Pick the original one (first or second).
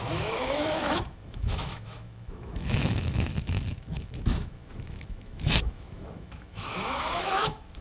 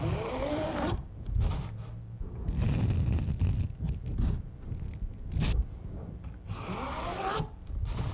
second